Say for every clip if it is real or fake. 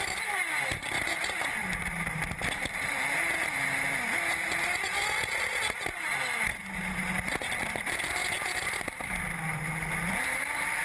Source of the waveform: real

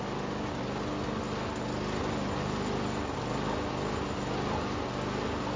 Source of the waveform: real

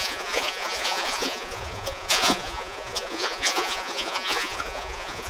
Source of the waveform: fake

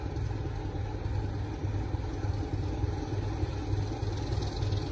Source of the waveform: real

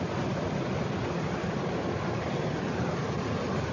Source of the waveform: real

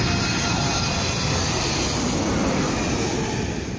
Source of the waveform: real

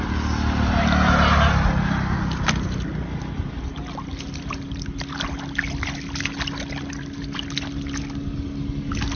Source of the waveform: real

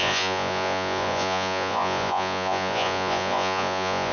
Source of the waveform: fake